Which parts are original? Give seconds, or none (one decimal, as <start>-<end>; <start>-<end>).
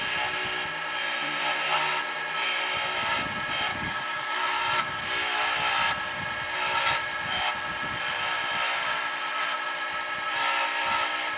0.0-3.7; 5.0-11.4